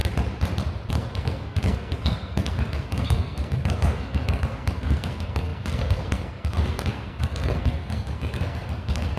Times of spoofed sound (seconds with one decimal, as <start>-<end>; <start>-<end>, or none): 0.9-9.2